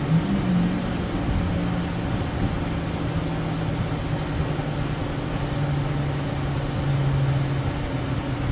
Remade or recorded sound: recorded